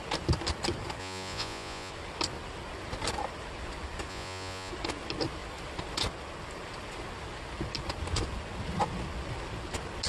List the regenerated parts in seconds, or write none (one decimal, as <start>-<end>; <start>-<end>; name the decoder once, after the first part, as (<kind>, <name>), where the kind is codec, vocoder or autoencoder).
1.0-1.9 (vocoder, Vocos); 4.1-4.7